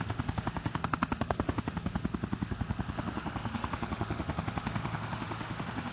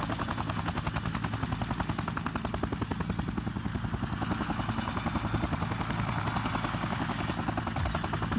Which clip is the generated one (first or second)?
first